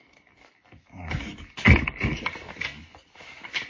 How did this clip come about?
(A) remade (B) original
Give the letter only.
A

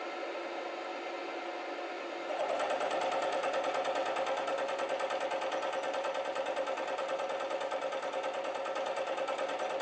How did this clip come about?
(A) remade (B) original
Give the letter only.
B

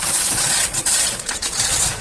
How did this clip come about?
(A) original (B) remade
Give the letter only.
B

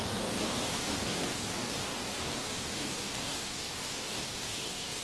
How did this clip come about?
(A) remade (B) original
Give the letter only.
A